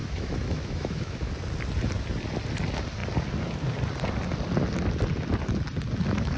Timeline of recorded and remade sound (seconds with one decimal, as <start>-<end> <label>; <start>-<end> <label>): 0.0-1.3 remade; 1.3-6.4 recorded